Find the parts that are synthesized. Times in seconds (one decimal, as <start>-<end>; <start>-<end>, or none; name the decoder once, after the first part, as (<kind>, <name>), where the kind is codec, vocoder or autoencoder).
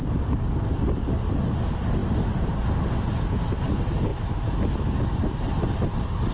none